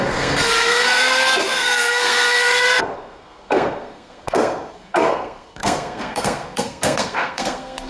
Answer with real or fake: fake